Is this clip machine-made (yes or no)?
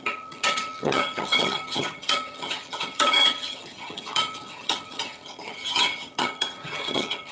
yes